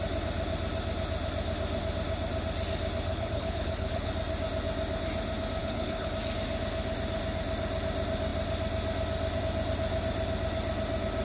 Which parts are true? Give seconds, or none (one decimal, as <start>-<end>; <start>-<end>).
0.0-3.1; 4.1-5.6; 6.1-11.2